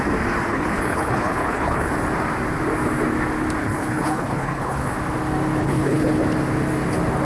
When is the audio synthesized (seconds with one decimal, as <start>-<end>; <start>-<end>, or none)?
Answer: 0.5-1.9; 3.6-4.9; 5.6-6.2